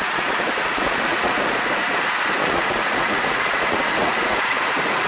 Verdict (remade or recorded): remade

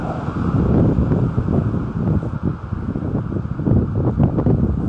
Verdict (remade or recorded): recorded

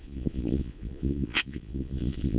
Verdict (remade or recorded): remade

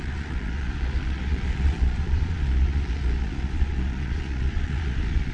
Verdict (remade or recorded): remade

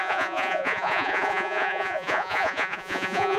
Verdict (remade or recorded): remade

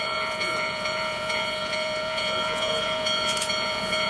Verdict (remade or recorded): remade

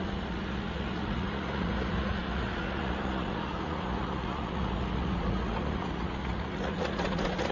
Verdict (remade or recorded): remade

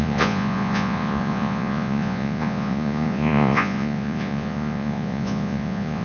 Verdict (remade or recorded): remade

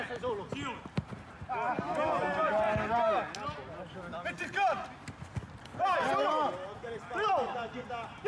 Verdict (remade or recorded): recorded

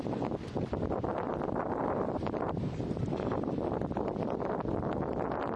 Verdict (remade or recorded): recorded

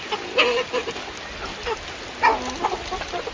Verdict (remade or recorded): recorded